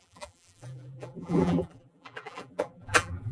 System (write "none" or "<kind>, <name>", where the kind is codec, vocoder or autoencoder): vocoder, BigVGAN v2